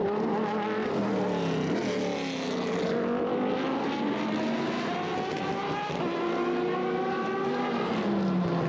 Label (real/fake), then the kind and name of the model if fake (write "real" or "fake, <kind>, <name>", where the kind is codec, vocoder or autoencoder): real